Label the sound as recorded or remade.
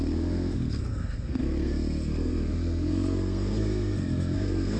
remade